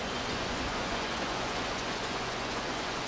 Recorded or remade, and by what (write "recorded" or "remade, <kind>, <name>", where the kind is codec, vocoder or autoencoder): remade, vocoder, Vocos